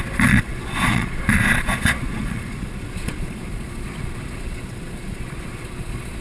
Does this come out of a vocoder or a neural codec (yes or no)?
yes